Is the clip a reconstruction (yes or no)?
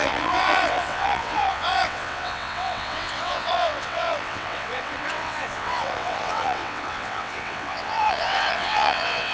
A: yes